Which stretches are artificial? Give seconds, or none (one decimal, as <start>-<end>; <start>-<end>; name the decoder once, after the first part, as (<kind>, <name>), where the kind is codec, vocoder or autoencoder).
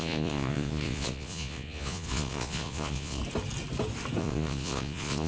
0.0-3.2 (vocoder, Vocos); 4.2-5.3